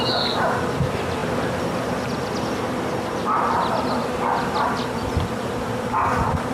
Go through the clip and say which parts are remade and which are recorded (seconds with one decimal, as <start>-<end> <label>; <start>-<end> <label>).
0.0-6.5 recorded

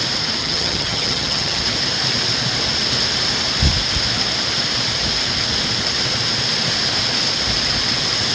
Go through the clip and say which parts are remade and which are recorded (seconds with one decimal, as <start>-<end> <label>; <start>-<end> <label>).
0.0-0.4 recorded; 0.4-1.6 remade; 1.6-8.3 recorded

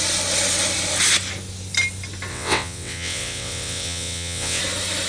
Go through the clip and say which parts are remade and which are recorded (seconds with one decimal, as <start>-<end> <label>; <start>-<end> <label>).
0.0-2.3 recorded; 2.3-4.6 remade; 4.6-5.1 recorded